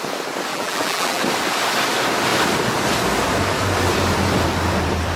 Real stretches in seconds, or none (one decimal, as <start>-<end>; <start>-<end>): 0.0-0.5; 1.2-5.2

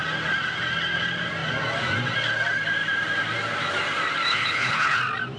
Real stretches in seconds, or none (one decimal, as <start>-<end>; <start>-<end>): 0.0-4.3; 5.0-5.4

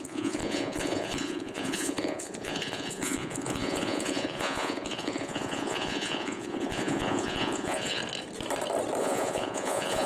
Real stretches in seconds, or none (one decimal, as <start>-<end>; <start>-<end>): 8.0-9.0

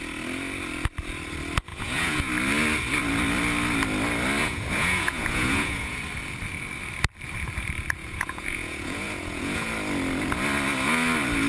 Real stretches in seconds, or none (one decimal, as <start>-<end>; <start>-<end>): 0.0-1.7; 2.3-4.4; 6.0-8.0; 9.7-11.5

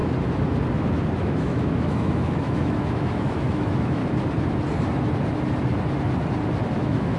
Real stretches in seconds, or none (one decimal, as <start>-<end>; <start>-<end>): 0.0-1.2; 4.0-6.7